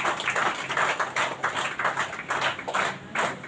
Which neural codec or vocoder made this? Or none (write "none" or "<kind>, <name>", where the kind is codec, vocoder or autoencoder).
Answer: none